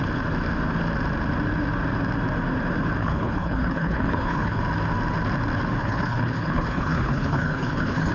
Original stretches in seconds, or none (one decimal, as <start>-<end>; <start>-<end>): 0.0-3.0; 4.6-5.8